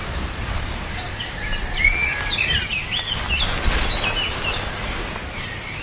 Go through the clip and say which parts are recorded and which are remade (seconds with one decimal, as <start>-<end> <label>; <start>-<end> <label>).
0.0-5.8 recorded